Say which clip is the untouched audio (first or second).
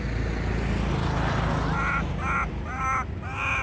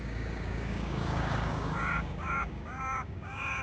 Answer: first